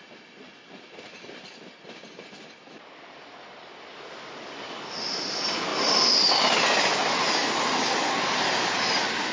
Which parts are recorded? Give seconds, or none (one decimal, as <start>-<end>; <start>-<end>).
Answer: 0.0-9.3